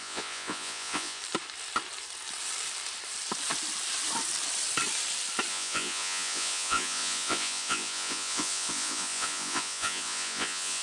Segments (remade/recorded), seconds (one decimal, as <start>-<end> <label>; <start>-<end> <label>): 0.0-1.2 remade; 1.2-5.5 recorded; 5.5-10.8 remade